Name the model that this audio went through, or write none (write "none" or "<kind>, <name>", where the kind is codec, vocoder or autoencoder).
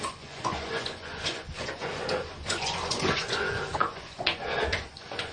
vocoder, Vocos